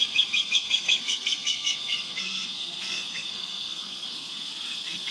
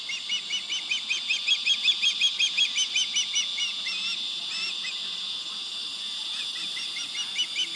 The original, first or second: second